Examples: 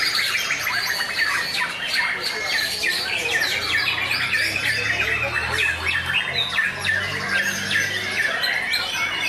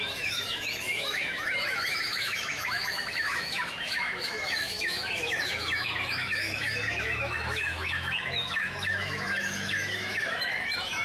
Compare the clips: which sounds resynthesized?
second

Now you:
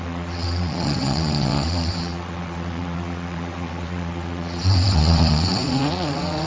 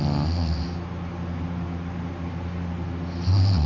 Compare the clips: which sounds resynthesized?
first